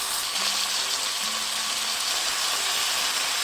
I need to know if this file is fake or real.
real